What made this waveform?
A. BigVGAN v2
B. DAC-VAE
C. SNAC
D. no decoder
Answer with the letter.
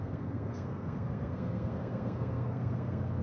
C